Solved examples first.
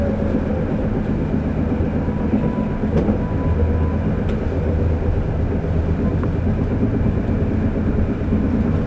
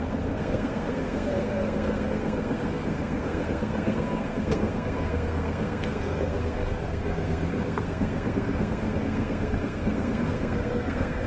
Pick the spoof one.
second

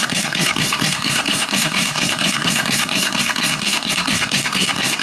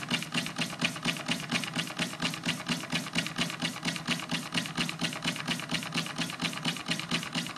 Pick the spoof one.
first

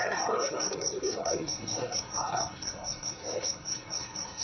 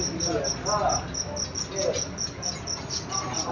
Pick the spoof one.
first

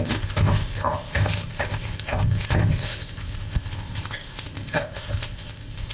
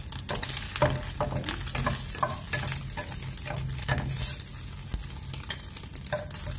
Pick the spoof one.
first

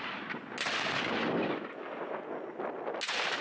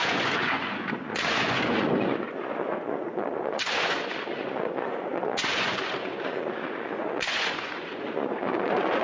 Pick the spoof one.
second